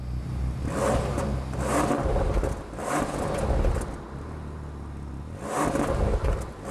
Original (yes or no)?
yes